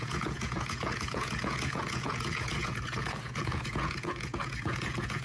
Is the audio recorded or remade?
remade